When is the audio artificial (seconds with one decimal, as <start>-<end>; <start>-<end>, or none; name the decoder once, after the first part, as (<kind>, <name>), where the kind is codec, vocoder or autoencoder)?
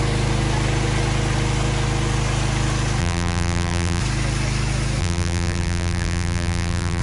3.0-4.0 (vocoder, BigVGAN v2); 5.0-7.0